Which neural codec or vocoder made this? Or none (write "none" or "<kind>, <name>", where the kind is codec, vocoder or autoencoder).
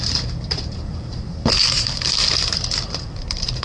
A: vocoder, BigVGAN v2